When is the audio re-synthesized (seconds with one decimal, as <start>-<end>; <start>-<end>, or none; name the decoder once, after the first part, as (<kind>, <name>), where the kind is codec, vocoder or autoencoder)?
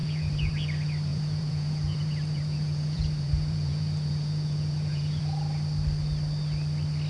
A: 0.0-0.5 (vocoder, Vocos); 1.1-5.2